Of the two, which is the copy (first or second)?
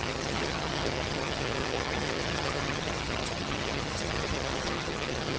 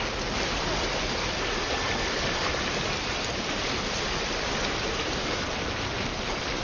first